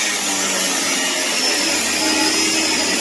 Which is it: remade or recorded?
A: recorded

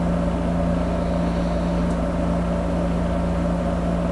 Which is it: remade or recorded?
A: recorded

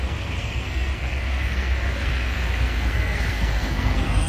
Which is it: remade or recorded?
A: remade